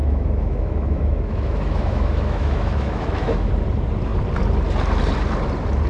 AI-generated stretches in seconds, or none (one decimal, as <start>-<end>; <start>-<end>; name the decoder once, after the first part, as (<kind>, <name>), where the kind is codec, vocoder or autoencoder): 0.0-3.5 (autoencoder, DAC-VAE)